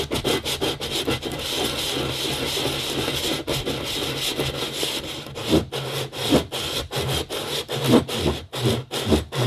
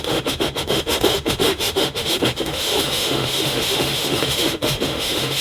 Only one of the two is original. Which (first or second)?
first